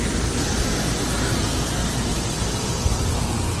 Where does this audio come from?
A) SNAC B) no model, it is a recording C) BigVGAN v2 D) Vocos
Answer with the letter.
B